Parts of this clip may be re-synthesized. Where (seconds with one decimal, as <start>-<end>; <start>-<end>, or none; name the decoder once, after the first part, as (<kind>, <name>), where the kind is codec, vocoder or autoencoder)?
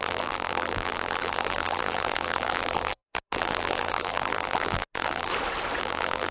0.0-5.3 (vocoder, BigVGAN v2); 5.8-6.3